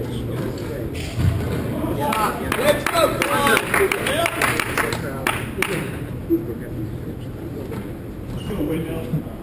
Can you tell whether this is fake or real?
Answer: fake